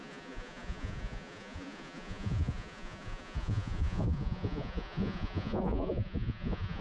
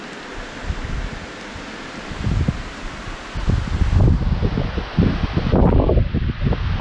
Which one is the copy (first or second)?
first